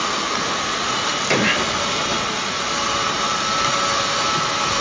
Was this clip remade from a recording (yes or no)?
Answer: no